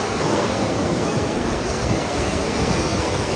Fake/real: fake